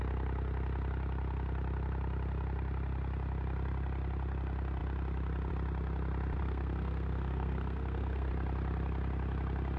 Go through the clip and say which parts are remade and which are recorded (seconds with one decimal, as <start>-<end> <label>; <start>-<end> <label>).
0.0-6.4 recorded; 6.4-8.3 remade; 8.3-9.8 recorded